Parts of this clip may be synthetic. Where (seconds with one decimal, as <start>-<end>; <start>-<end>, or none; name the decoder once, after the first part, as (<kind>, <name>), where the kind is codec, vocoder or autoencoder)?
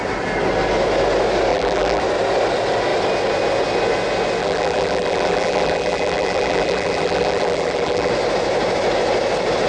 1.5-2.0 (vocoder, BigVGAN v2); 4.4-8.1